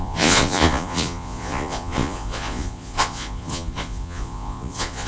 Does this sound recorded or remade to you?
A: remade